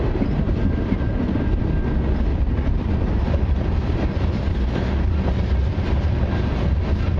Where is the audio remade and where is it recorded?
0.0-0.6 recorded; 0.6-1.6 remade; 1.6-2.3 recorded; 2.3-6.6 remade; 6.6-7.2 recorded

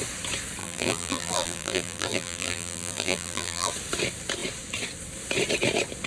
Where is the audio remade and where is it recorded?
0.0-0.6 recorded; 0.6-3.7 remade; 3.7-6.1 recorded

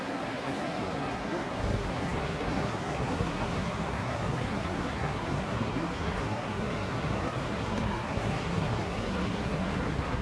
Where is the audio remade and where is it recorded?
0.0-10.2 remade

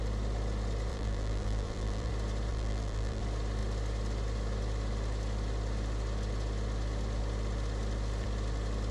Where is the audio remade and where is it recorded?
0.0-0.9 recorded; 0.9-2.1 remade; 2.1-2.5 recorded; 2.5-3.2 remade; 3.2-8.9 recorded

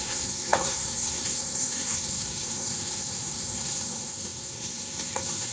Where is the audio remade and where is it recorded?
0.0-5.5 remade